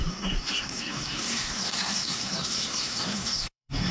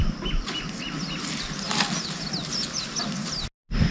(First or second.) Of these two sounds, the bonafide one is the second